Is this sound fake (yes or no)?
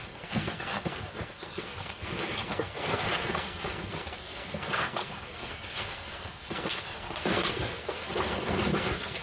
yes